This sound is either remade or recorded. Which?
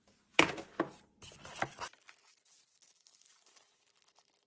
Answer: recorded